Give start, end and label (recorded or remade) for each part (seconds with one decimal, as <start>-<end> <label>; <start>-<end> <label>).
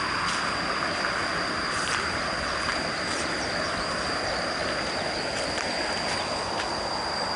0.0-7.4 recorded